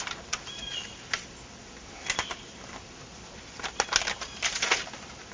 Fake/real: real